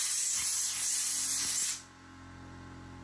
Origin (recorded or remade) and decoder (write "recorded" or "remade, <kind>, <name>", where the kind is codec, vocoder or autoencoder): recorded